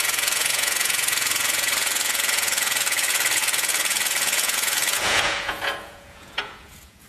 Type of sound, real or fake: fake